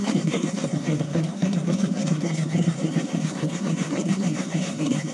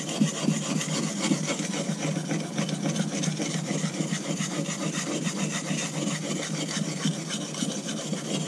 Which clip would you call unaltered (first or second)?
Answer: second